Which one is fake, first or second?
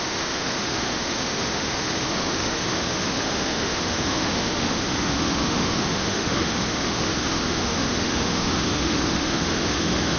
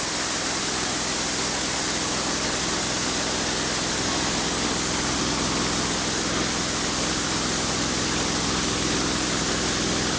first